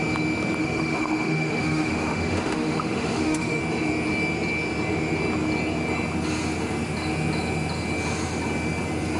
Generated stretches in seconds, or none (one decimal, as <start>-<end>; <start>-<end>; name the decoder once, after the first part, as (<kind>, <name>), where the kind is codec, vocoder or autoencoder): 0.6-3.6 (autoencoder, DAC-VAE)